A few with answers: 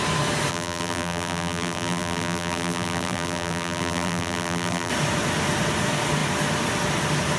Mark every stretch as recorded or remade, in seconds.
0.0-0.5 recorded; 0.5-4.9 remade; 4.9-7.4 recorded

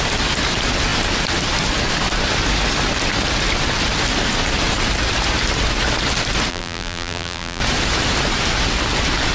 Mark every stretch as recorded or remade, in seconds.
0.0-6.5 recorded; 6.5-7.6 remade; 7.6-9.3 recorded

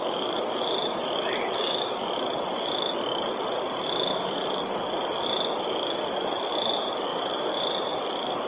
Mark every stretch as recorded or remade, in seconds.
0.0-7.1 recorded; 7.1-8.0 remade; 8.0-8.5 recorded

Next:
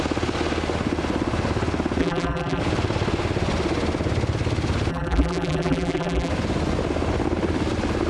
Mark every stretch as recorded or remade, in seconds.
0.0-2.0 recorded; 2.0-2.6 remade; 2.6-4.9 recorded; 4.9-6.3 remade; 6.3-8.1 recorded

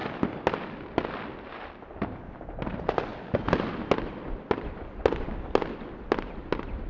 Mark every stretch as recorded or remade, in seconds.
0.0-6.9 recorded

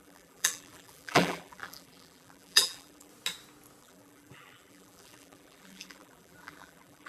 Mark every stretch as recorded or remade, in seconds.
0.0-3.1 remade; 3.1-3.8 recorded; 3.8-7.1 remade